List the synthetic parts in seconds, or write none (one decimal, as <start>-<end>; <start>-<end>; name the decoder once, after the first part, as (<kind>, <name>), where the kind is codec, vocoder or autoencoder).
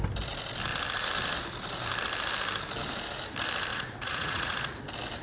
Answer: 3.7-4.8 (vocoder, Vocos)